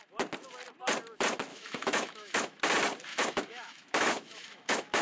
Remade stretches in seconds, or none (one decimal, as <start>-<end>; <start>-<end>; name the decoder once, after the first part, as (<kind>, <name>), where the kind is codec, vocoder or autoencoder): 1.5-2.6 (autoencoder, DAC-VAE); 3.1-5.0